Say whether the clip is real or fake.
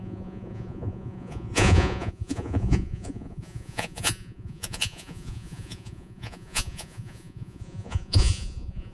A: fake